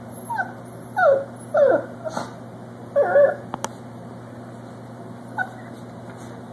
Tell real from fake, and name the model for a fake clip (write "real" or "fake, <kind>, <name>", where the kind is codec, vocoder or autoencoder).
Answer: real